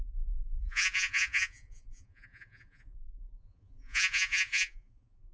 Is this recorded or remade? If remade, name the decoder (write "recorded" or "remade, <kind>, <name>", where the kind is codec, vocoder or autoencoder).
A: remade, vocoder, Vocos